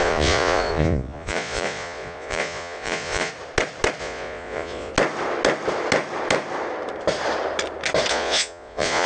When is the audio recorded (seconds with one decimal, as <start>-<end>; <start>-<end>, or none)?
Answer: 3.3-4.0; 4.9-8.1